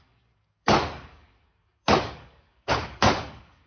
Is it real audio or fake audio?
fake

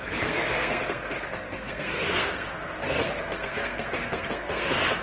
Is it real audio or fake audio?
fake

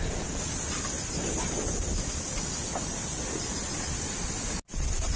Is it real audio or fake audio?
real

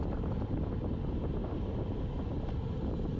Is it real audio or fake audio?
real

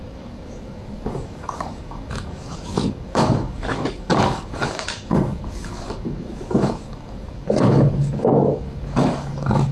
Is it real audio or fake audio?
fake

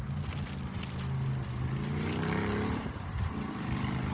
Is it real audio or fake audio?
real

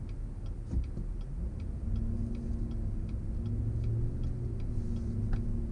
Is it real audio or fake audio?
real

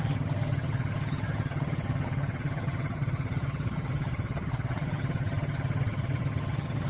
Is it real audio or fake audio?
fake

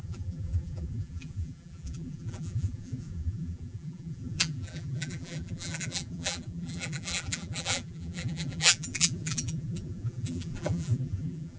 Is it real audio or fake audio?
fake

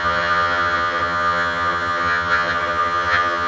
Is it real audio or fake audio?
fake